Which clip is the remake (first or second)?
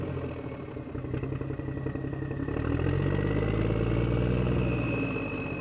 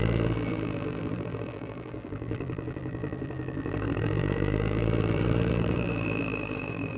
second